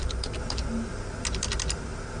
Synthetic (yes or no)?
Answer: no